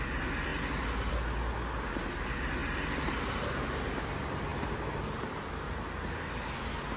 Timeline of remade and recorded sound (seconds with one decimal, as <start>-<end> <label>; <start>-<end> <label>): 0.0-7.0 recorded